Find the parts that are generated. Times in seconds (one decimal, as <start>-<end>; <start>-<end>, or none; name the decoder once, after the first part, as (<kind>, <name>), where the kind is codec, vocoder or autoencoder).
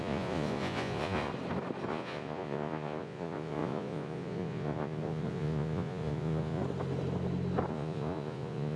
0.0-1.3 (vocoder, Vocos); 1.9-6.6; 7.7-8.8